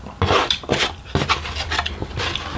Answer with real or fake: real